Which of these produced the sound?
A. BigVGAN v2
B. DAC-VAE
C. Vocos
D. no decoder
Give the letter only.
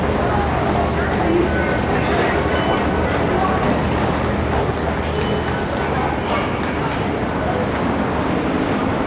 D